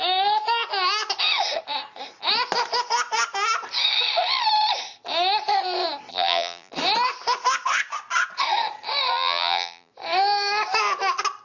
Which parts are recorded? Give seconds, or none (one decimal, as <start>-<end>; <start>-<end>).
0.0-6.1; 6.7-9.1; 9.9-11.4